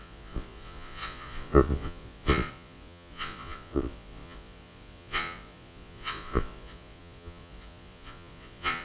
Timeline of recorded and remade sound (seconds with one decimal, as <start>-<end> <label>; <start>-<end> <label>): 0.0-8.8 remade